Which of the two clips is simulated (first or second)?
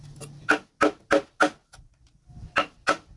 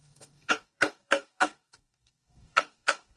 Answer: second